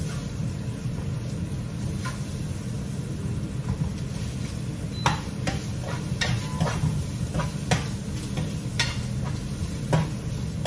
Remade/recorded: recorded